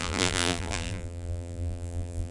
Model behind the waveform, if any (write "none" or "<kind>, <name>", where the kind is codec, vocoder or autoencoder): vocoder, BigVGAN v2